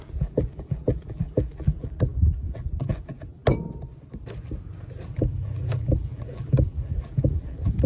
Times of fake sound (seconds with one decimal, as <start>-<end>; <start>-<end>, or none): 0.0-3.4; 5.1-7.9